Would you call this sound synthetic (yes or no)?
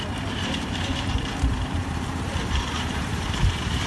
yes